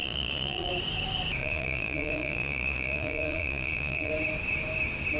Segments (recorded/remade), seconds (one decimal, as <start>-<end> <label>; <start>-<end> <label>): 0.0-0.7 remade; 0.7-1.4 recorded; 1.4-4.1 remade; 4.1-5.2 recorded